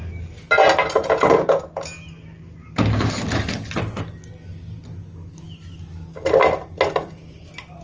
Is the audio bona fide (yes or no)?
yes